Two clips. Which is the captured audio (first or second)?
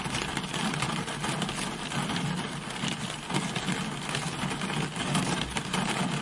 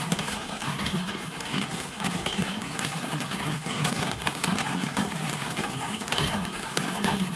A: first